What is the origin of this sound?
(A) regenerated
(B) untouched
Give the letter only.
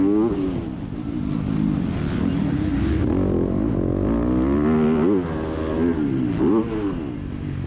B